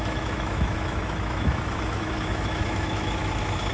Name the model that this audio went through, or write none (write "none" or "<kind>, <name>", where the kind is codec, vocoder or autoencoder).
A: autoencoder, DAC-VAE